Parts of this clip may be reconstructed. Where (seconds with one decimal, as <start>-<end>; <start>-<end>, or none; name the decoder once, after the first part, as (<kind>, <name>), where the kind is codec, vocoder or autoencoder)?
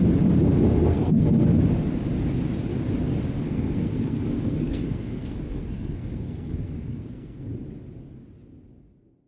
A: 0.9-1.6 (codec, SNAC); 3.4-7.5